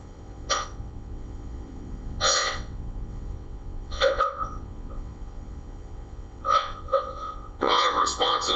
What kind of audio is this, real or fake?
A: fake